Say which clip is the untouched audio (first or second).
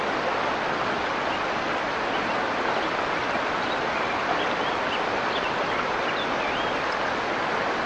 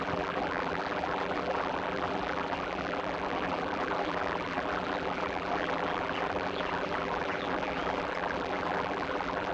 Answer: first